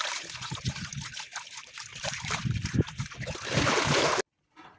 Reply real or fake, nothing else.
real